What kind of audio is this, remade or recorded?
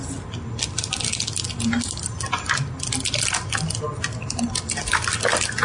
recorded